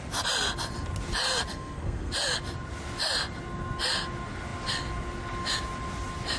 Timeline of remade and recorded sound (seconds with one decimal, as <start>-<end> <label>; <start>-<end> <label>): 0.0-1.5 recorded; 1.5-2.1 remade; 2.1-6.4 recorded